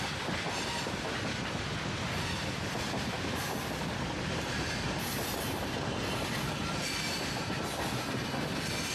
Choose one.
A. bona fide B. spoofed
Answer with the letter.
A